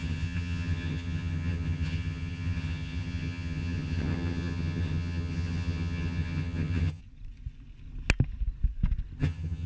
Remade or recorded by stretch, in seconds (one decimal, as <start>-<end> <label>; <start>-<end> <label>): 0.0-7.0 remade; 7.0-9.2 recorded; 9.2-9.7 remade